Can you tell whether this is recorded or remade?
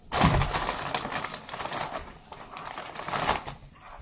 recorded